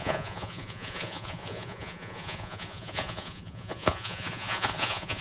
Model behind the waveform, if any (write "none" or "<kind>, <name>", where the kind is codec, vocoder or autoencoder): vocoder, Vocos